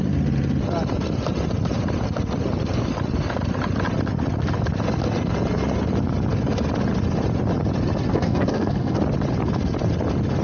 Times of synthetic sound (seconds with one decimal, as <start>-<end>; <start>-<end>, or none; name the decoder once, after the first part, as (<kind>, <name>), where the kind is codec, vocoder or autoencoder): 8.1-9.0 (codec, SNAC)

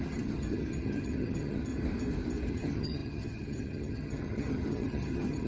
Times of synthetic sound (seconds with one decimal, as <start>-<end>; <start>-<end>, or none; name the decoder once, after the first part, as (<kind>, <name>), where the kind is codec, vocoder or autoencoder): 0.0-1.7 (vocoder, HiFi-GAN); 2.5-5.5

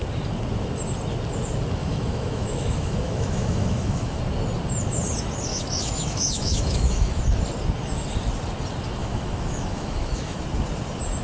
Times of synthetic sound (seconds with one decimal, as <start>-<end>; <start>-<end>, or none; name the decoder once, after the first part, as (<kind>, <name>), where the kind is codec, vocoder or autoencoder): 1.8-4.2 (autoencoder, DAC-VAE); 5.5-7.2; 9.0-10.4

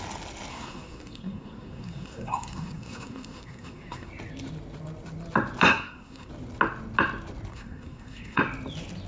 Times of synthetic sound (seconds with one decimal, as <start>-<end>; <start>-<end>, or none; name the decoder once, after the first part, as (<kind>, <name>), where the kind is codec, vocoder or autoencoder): 0.5-4.1 (codec, SNAC); 5.7-6.3; 7.5-8.4

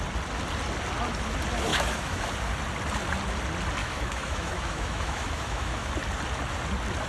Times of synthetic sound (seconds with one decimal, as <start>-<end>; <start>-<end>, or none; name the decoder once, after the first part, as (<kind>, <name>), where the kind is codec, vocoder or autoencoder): 1.7-2.2 (autoencoder, DAC-VAE); 3.8-5.9

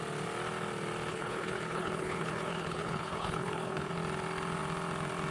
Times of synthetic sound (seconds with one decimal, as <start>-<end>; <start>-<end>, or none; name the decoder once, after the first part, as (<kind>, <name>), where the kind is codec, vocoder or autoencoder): 1.1-3.9 (codec, HILCodec)